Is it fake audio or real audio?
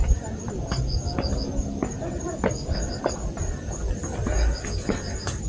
real